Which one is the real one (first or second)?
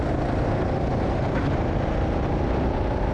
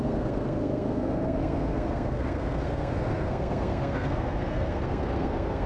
first